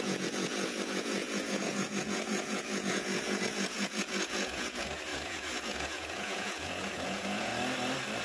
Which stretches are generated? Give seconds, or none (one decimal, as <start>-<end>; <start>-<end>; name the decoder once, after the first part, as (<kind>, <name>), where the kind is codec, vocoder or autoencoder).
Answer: 0.0-7.5 (vocoder, Vocos)